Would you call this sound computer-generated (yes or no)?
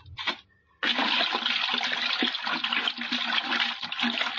no